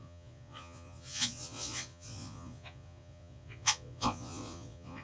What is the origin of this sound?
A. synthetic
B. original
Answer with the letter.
A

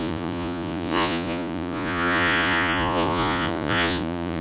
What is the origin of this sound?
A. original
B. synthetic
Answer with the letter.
B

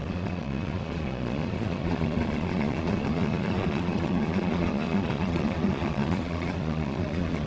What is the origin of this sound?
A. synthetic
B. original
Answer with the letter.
A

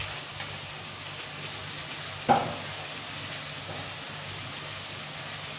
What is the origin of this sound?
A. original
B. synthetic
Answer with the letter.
A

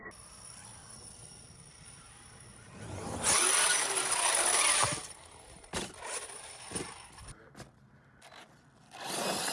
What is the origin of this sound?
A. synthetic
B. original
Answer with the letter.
B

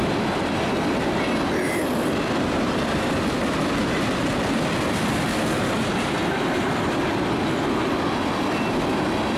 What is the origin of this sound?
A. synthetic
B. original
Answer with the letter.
B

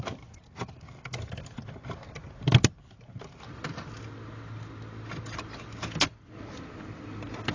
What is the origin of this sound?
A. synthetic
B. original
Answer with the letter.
B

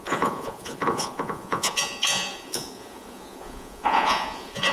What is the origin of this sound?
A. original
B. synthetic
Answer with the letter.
B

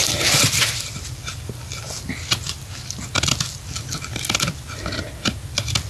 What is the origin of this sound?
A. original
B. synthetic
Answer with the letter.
A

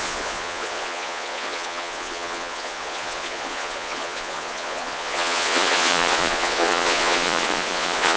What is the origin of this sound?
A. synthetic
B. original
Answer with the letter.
A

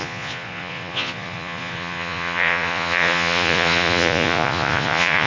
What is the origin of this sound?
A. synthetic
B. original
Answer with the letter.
A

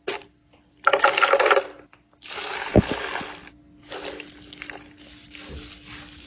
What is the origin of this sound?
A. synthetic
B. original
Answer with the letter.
B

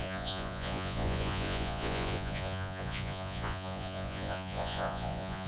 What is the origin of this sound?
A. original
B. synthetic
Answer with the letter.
B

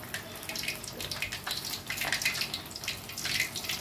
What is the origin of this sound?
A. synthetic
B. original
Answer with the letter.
B